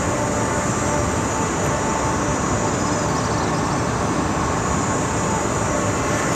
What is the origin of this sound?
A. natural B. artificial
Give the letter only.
A